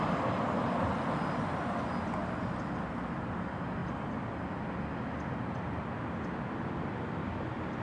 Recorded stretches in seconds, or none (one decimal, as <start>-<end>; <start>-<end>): 0.0-7.8